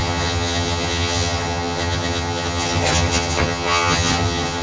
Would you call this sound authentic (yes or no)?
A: no